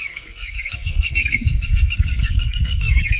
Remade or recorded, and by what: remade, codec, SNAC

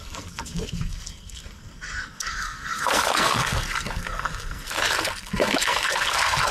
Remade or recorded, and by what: remade, codec, SNAC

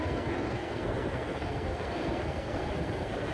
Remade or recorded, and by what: remade, codec, SNAC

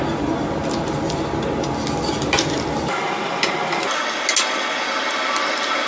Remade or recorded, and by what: recorded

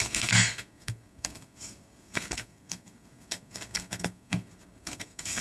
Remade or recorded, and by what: remade, codec, SNAC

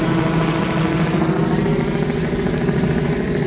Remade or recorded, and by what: recorded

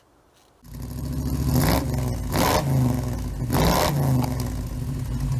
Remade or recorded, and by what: recorded